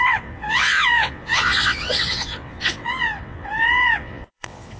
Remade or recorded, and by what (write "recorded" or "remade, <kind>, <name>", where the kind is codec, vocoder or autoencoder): remade, vocoder, WaveNeXt